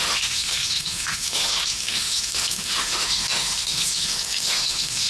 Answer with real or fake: fake